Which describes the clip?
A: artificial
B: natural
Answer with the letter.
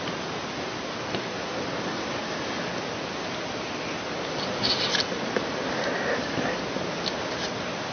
B